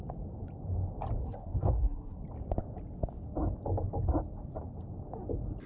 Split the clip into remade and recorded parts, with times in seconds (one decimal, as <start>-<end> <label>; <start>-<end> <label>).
0.0-1.2 recorded; 1.2-2.2 remade; 2.2-5.7 recorded